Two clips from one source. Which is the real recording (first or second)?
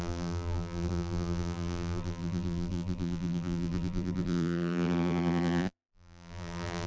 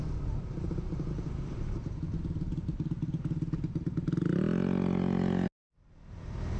second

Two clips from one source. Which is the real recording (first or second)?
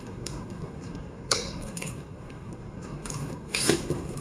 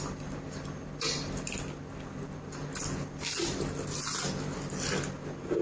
second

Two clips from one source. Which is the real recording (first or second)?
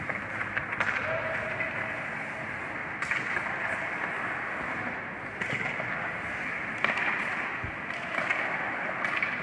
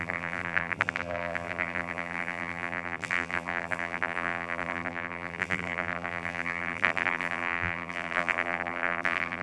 first